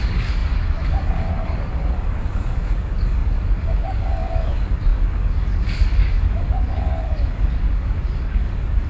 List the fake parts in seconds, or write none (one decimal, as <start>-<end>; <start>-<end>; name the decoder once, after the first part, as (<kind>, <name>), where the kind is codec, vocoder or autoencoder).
0.0-8.9 (codec, DAC)

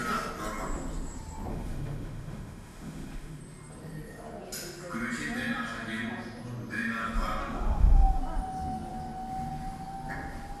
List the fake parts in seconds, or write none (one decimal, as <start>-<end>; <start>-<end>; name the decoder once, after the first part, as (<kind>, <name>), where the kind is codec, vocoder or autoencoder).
1.5-3.4 (autoencoder, DAC-VAE); 7.4-8.2